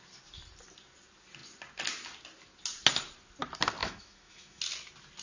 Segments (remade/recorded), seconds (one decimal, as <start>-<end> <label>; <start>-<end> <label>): 0.0-3.8 recorded; 3.8-4.6 remade; 4.6-5.2 recorded